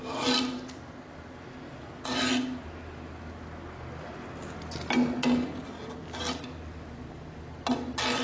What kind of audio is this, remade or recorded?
recorded